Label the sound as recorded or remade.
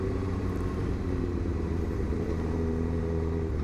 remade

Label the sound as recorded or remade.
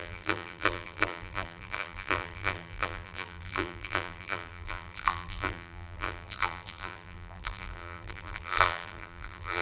remade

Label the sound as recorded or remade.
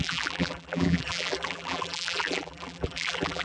remade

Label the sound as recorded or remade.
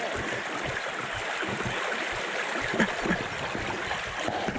recorded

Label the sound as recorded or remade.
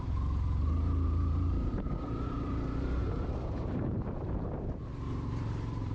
remade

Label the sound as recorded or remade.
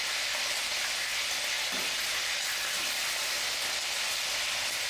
recorded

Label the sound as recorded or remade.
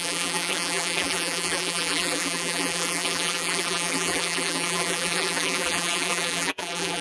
remade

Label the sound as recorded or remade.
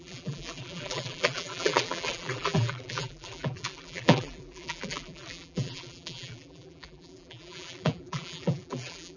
remade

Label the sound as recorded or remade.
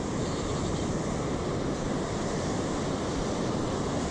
remade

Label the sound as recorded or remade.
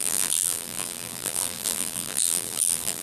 remade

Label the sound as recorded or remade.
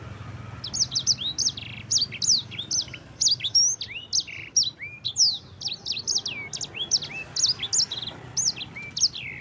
recorded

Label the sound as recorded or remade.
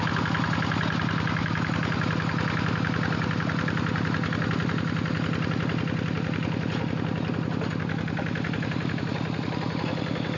recorded